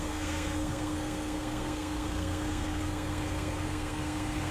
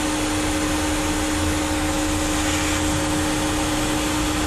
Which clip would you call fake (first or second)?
first